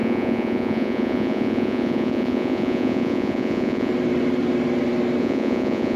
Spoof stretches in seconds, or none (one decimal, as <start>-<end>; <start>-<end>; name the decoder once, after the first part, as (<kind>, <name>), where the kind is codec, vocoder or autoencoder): 0.0-3.9 (vocoder, Vocos); 5.2-6.0